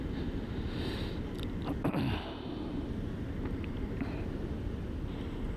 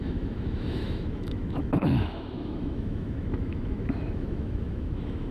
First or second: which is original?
first